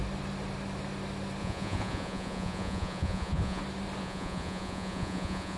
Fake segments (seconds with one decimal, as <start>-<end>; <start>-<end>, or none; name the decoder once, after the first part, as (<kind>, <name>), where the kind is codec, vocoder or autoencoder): 1.4-3.6 (vocoder, Vocos); 4.0-5.6